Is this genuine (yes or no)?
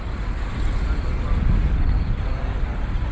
yes